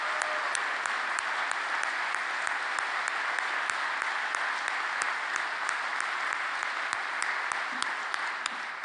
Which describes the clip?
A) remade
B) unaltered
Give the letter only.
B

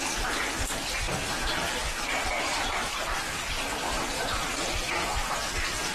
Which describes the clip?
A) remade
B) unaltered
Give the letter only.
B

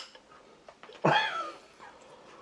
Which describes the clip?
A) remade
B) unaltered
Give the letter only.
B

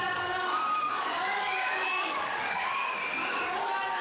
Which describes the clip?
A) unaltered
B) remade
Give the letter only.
B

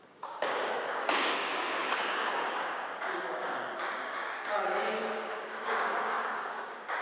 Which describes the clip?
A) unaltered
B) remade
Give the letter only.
B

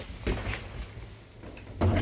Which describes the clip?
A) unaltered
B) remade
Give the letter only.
A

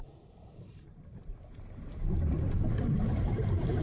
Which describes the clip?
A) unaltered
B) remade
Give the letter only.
B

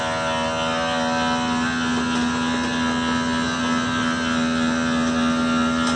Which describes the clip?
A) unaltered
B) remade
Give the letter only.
A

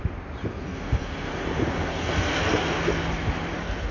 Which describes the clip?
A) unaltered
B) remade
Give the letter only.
A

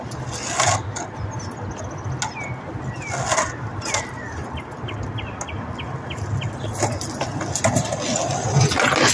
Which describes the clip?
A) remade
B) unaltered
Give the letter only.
B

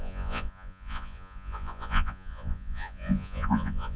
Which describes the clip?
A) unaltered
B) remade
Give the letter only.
B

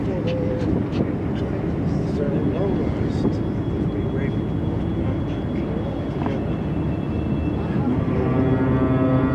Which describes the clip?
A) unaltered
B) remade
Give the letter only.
A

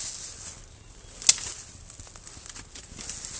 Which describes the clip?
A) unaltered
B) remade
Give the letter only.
A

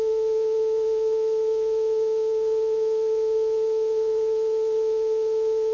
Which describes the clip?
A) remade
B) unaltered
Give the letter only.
A